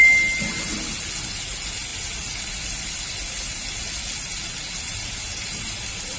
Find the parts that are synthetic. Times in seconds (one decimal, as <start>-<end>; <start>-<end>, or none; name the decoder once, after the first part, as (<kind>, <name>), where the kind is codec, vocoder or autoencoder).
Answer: none